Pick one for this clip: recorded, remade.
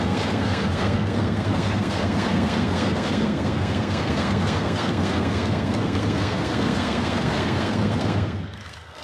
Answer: remade